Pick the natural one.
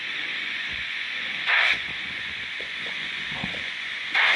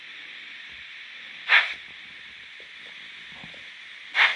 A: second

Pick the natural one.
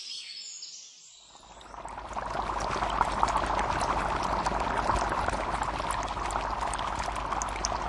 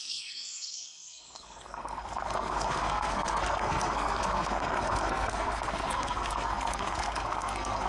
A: first